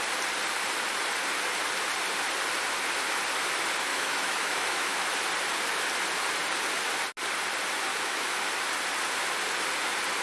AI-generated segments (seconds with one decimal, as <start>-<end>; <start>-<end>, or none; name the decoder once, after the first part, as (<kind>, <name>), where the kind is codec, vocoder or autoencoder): 3.9-5.1 (autoencoder, DAC-VAE); 7.9-8.4